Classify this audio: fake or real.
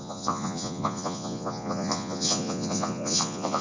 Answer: fake